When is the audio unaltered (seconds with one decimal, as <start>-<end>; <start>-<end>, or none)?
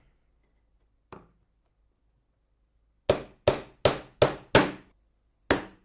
0.0-5.8